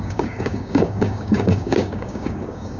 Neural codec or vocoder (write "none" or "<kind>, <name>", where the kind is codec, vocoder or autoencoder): codec, DAC